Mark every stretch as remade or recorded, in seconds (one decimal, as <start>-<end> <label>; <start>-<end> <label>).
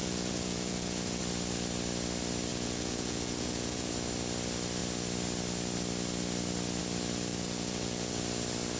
0.0-1.2 remade; 1.2-2.5 recorded; 2.5-3.9 remade; 3.9-7.3 recorded; 7.3-8.2 remade; 8.2-8.8 recorded